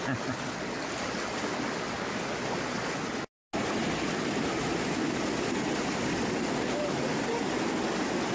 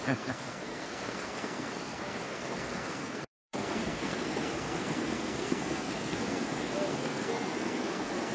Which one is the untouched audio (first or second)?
first